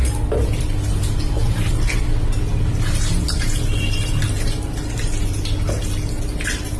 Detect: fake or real real